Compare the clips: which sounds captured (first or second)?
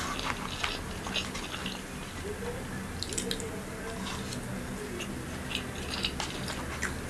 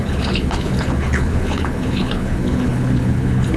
first